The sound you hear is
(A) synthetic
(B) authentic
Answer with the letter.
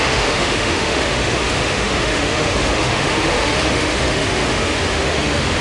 A